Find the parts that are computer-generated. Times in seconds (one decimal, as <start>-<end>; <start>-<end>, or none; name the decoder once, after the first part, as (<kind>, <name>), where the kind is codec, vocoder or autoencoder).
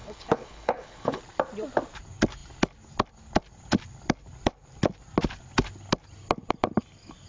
0.0-1.2 (codec, HILCodec)